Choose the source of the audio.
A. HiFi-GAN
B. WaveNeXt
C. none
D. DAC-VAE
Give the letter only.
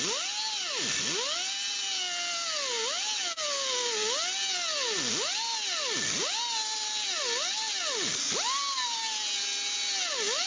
C